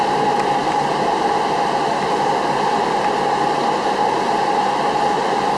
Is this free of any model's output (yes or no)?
yes